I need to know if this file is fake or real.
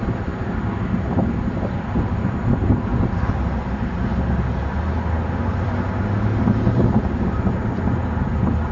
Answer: real